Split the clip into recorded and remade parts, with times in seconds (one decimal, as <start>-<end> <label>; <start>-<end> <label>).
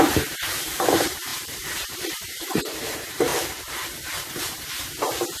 0.0-3.3 remade; 3.3-4.4 recorded; 4.4-5.4 remade